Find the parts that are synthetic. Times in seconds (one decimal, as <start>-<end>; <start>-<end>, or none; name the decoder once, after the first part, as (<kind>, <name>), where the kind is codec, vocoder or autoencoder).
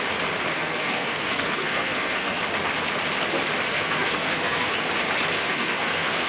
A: 0.5-2.4 (codec, SNAC); 3.7-4.7; 5.4-6.3